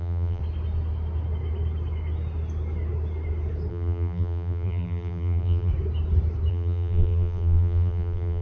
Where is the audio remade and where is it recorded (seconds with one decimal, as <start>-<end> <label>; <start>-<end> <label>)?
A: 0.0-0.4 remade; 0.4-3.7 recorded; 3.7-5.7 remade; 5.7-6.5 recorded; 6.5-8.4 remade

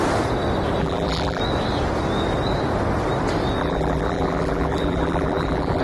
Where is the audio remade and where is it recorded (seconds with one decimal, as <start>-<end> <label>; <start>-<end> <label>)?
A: 0.0-0.8 recorded; 0.8-1.4 remade; 1.4-3.6 recorded; 3.6-5.8 remade

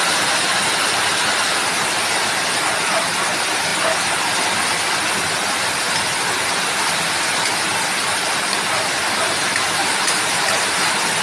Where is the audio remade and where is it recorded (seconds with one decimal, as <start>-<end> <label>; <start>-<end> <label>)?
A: 0.0-9.8 recorded; 9.8-10.7 remade; 10.7-11.2 recorded